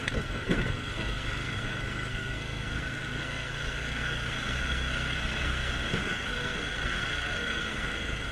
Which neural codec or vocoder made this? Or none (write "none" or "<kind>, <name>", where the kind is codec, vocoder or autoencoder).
codec, SNAC